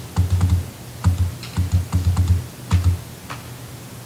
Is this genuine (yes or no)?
yes